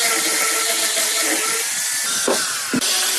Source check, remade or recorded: recorded